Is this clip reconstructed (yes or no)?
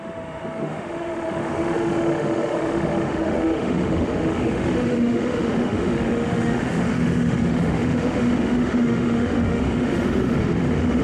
yes